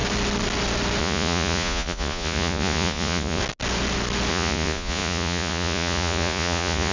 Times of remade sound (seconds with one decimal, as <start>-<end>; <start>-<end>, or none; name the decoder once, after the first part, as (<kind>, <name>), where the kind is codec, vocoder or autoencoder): 1.0-3.4 (vocoder, Vocos); 4.3-6.9